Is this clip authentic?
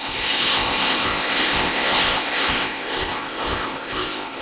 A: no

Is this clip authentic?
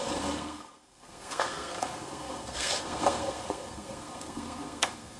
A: no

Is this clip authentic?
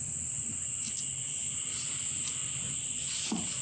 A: yes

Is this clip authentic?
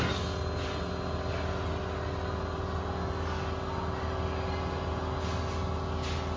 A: yes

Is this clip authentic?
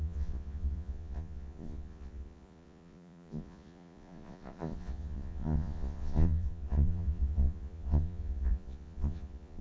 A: no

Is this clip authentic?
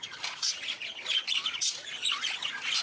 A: no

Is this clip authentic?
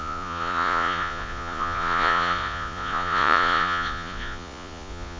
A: no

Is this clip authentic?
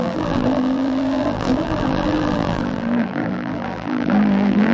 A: no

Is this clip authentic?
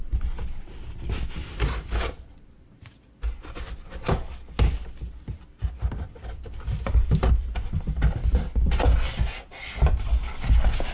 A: yes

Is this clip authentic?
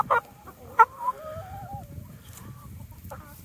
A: no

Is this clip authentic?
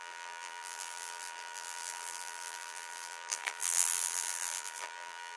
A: no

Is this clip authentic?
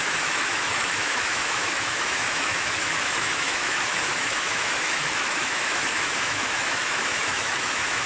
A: no